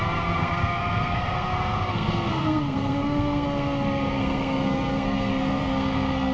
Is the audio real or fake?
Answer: fake